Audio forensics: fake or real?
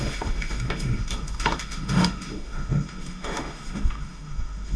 fake